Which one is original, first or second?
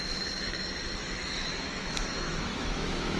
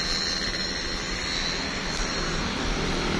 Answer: second